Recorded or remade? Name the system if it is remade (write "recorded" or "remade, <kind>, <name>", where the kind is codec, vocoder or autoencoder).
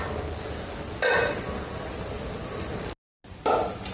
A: recorded